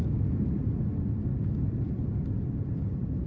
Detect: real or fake real